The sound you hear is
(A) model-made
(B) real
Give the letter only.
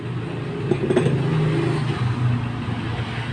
B